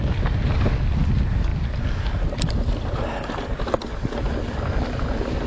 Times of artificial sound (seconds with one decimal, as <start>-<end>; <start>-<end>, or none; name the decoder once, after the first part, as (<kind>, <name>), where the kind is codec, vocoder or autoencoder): none